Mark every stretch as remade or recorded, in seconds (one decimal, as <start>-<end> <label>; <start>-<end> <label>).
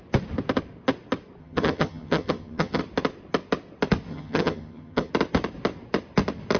0.0-1.4 recorded; 1.4-2.8 remade; 2.8-4.1 recorded; 4.1-5.1 remade; 5.1-6.6 recorded